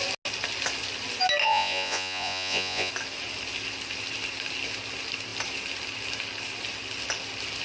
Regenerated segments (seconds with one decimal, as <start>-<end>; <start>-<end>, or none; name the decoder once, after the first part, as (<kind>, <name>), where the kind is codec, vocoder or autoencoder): 1.4-2.9 (vocoder, Vocos)